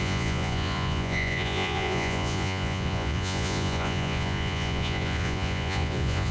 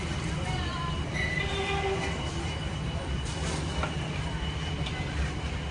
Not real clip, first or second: first